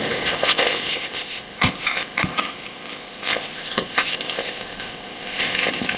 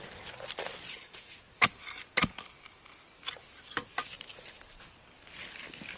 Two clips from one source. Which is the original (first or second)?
second